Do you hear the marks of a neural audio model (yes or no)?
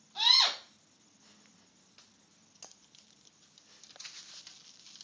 no